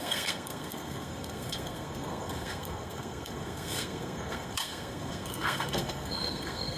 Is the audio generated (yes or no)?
yes